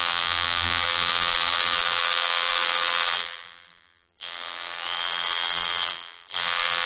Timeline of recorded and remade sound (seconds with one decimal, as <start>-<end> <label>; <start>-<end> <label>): 0.0-6.9 remade